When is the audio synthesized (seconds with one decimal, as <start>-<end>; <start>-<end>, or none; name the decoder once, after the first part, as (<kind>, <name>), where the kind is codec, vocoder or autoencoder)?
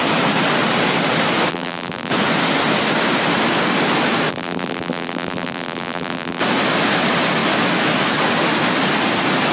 1.5-2.1 (vocoder, BigVGAN v2); 4.3-6.4